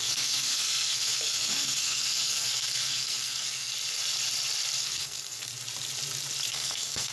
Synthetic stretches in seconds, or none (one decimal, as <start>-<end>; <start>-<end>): 0.0-3.7; 4.8-5.5; 6.5-7.1